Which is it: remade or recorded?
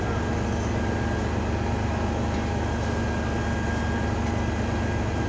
recorded